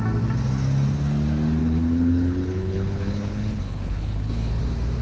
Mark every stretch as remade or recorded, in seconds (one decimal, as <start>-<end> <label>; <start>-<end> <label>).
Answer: 0.0-1.6 recorded; 1.6-4.6 remade; 4.6-5.0 recorded